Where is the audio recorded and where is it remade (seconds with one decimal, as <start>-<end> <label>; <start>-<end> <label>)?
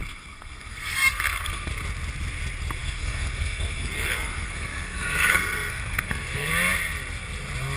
0.0-1.7 remade; 1.7-2.8 recorded; 2.8-6.5 remade; 6.5-7.8 recorded